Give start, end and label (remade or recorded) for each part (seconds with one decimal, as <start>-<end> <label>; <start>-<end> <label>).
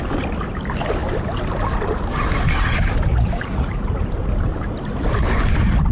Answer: 0.0-3.1 recorded; 3.1-4.0 remade; 4.0-5.9 recorded